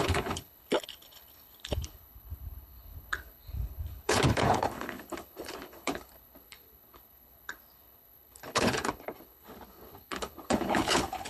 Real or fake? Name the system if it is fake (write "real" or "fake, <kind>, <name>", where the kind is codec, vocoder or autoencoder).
fake, codec, HILCodec